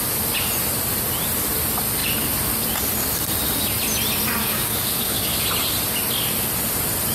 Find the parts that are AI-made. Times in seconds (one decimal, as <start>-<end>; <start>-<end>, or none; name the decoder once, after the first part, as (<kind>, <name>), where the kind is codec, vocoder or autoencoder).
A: 4.4-5.4 (codec, DAC)